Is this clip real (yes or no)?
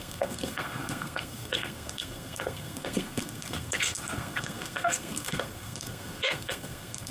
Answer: no